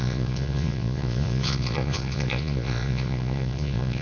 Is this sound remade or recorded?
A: remade